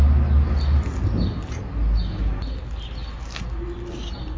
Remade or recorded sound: recorded